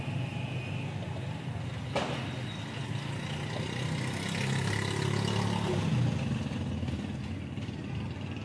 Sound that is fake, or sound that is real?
real